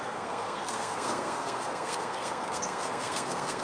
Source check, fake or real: fake